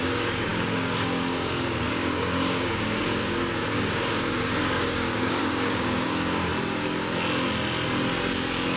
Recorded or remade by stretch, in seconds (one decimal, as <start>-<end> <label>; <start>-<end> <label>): 0.0-6.5 remade; 6.5-8.8 recorded